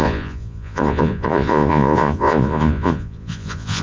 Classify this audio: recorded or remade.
remade